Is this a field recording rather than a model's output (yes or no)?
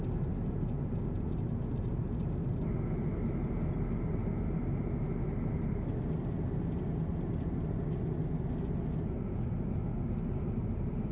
yes